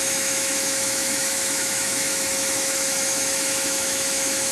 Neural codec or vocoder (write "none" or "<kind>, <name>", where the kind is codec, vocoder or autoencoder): autoencoder, DAC-VAE